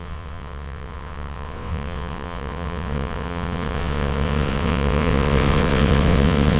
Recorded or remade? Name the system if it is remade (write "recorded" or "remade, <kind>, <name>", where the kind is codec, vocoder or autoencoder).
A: remade, vocoder, WaveNeXt